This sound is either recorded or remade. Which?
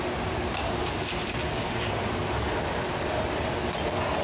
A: recorded